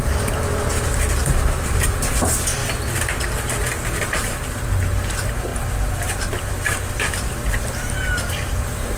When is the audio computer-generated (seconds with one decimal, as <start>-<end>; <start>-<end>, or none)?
0.0-2.6; 4.0-9.0